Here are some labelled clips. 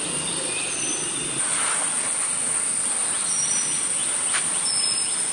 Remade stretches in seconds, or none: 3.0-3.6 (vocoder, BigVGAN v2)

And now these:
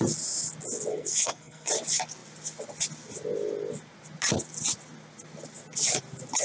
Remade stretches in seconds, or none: 0.9-1.7 (codec, SNAC)

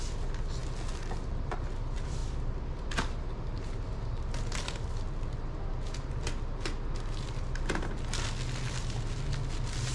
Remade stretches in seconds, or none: none

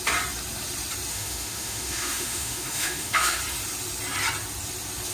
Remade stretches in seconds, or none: 1.1-3.4 (autoencoder, DAC-VAE)

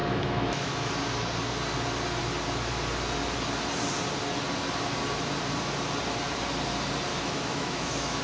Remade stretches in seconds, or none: 0.0-0.9 (autoencoder, DAC-VAE); 7.1-8.2

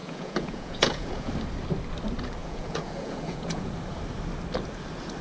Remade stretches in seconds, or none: 0.0-1.3 (vocoder, Vocos); 2.4-3.7